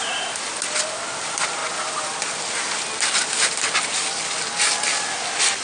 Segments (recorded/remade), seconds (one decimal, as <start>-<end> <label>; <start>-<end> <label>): 0.0-5.6 recorded